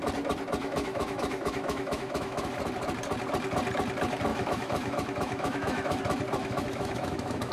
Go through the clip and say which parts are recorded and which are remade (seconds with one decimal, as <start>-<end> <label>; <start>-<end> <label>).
0.0-0.6 recorded; 0.6-2.6 remade; 2.6-4.3 recorded; 4.3-6.0 remade; 6.0-6.4 recorded; 6.4-7.5 remade